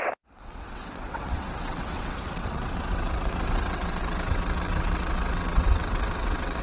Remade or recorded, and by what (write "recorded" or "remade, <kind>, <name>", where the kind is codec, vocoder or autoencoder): remade, vocoder, WaveNeXt